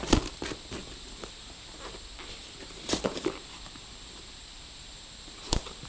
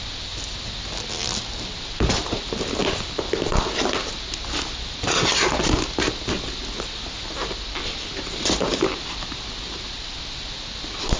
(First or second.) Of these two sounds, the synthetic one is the first